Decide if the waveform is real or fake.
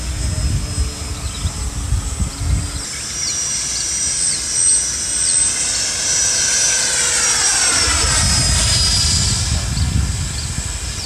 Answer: real